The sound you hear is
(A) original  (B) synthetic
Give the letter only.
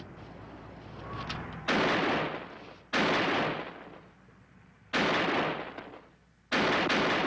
A